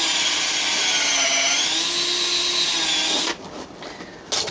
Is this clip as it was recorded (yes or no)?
yes